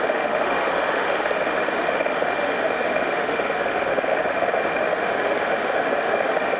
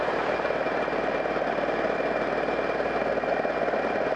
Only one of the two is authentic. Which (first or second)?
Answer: second